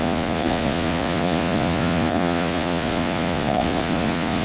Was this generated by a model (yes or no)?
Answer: yes